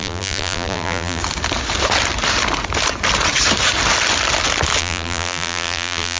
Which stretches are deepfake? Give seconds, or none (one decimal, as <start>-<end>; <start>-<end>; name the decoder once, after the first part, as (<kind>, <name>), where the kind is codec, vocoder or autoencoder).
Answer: 0.0-1.2 (vocoder, BigVGAN v2); 4.8-6.2